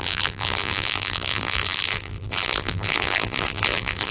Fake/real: fake